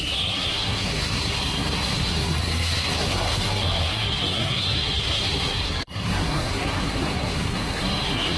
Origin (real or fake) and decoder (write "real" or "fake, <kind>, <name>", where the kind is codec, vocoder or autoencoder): fake, codec, SNAC